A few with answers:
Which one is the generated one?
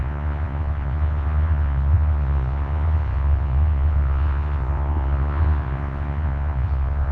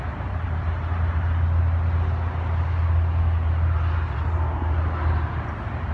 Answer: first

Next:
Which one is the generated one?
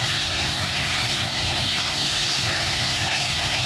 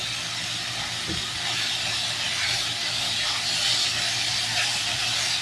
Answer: first